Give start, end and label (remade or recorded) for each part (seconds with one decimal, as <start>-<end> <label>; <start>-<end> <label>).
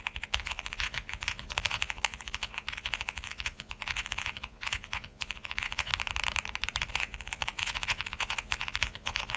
0.0-5.9 remade; 5.9-6.9 recorded; 6.9-9.4 remade